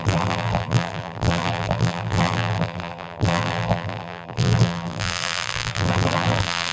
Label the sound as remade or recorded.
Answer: remade